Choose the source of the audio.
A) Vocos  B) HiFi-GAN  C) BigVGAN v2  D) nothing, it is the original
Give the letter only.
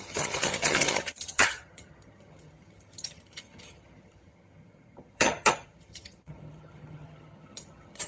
B